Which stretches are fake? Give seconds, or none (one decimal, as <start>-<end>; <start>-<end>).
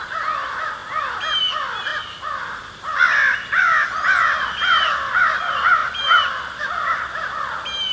none